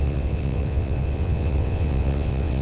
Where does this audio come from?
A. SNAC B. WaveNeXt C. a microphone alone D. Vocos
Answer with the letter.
B